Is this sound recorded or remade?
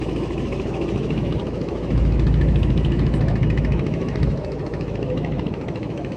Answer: remade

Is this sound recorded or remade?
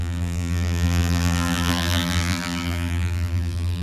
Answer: remade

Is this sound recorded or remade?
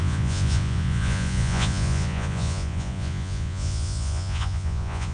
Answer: remade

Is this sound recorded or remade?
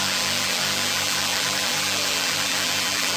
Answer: remade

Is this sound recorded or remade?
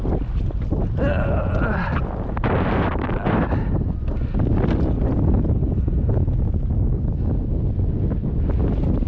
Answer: recorded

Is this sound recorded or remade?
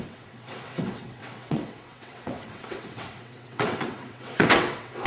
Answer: remade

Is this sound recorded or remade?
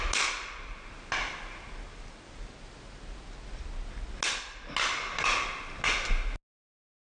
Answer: recorded